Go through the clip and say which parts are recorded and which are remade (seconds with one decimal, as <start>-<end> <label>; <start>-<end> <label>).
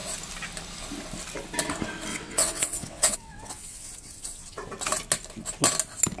0.0-2.1 recorded; 2.1-4.6 remade; 4.6-6.2 recorded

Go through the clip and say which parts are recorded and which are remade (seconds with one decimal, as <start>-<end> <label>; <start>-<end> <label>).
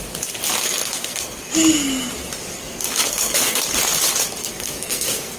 0.0-0.6 recorded; 0.6-1.5 remade; 1.5-2.6 recorded; 2.6-3.6 remade; 3.6-4.4 recorded; 4.4-5.4 remade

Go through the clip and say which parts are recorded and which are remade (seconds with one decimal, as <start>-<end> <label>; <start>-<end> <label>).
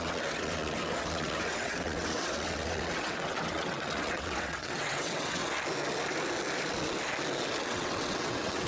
0.0-5.4 remade; 5.4-7.6 recorded; 7.6-8.7 remade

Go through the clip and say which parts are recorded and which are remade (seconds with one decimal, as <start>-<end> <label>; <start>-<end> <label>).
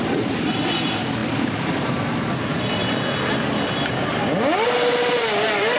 0.0-1.2 recorded; 1.2-1.9 remade; 1.9-5.8 recorded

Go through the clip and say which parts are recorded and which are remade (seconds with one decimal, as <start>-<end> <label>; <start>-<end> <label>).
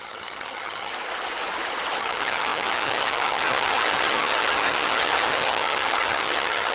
0.0-0.9 remade; 0.9-2.0 recorded; 2.0-6.7 remade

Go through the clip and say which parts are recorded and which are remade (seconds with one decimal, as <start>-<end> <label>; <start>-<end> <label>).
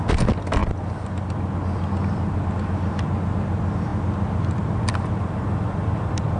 0.0-6.4 recorded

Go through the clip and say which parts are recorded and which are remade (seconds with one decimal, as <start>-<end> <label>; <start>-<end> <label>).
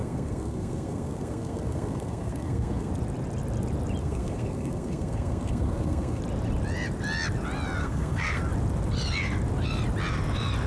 0.0-2.9 remade; 2.9-4.0 recorded; 4.0-6.2 remade; 6.2-7.8 recorded; 7.8-8.4 remade; 8.4-10.7 recorded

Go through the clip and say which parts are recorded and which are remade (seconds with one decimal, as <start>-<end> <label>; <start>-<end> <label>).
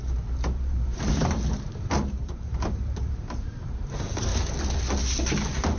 0.0-4.3 remade; 4.3-5.8 recorded